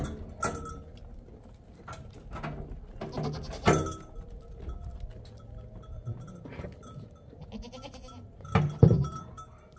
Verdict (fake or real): real